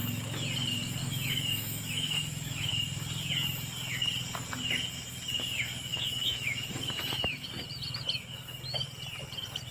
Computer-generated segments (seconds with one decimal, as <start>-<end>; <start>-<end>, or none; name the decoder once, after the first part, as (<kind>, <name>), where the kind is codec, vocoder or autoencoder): 1.0-2.7 (autoencoder, DAC-VAE); 5.9-7.5